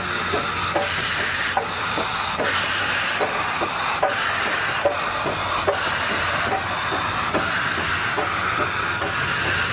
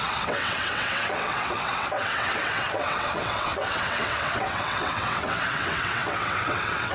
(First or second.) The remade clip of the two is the second